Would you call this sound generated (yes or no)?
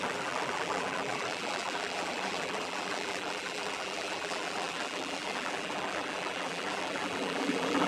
yes